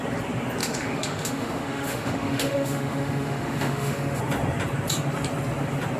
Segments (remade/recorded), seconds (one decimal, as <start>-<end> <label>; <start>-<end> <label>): 0.0-0.6 recorded; 0.6-4.2 remade; 4.2-6.0 recorded